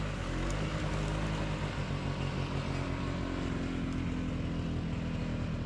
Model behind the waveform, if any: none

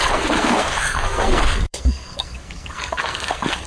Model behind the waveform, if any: codec, SNAC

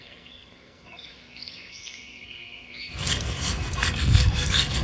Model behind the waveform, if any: codec, SNAC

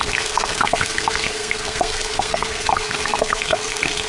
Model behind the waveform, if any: codec, SNAC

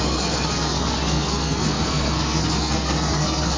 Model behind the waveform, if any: codec, SNAC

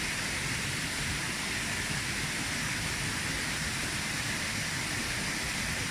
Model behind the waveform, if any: none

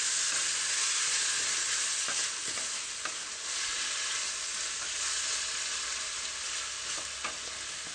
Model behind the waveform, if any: none